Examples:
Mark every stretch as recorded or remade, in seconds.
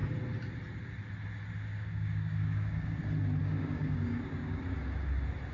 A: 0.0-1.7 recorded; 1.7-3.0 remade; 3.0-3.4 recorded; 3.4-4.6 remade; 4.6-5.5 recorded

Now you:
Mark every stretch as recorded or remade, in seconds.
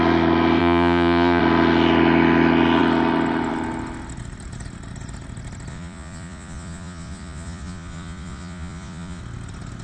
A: 0.0-0.6 recorded; 0.6-1.4 remade; 1.4-5.7 recorded; 5.7-9.2 remade; 9.2-9.8 recorded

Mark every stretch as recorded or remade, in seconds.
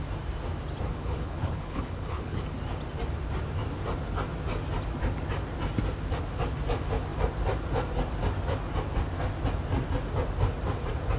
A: 0.0-0.9 recorded; 0.9-2.4 remade; 2.4-11.2 recorded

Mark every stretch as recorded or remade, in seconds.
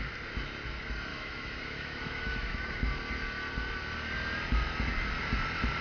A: 0.0-1.1 recorded; 1.1-2.7 remade; 2.7-5.8 recorded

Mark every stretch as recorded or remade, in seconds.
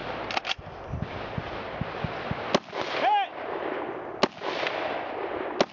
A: 0.0-5.7 recorded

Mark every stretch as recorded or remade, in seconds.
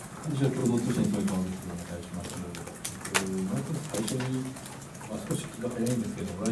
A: 0.0-6.5 recorded